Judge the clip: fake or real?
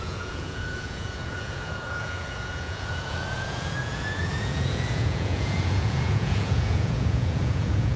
fake